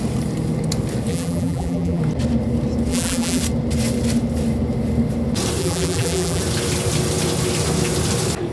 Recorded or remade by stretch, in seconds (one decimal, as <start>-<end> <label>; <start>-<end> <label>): 0.0-1.1 recorded; 1.1-2.0 remade; 2.0-2.9 recorded; 2.9-3.4 remade; 3.4-5.6 recorded; 5.6-6.4 remade; 6.4-8.5 recorded